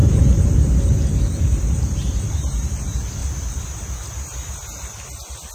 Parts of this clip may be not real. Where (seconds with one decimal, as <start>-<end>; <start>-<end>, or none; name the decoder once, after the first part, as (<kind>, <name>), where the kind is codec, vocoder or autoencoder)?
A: 0.0-2.7 (vocoder, BigVGAN v2)